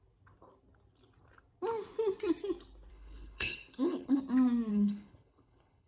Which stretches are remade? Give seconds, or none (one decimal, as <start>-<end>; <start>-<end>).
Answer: 2.9-4.2; 4.7-5.9